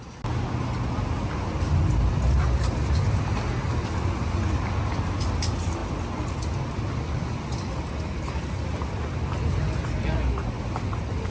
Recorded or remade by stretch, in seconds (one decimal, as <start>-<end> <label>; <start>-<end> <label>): 0.0-11.3 recorded